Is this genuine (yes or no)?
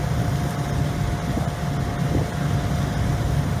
yes